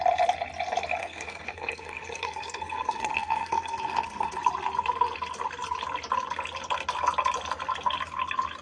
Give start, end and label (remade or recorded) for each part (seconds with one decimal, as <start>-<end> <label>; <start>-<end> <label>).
0.0-1.0 recorded; 1.0-4.4 remade; 4.4-8.6 recorded